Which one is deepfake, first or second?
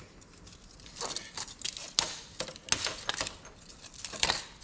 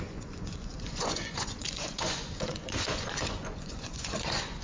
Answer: second